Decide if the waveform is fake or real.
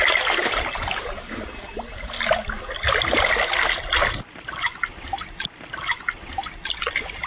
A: real